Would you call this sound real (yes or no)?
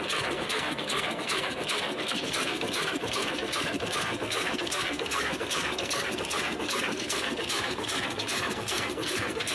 no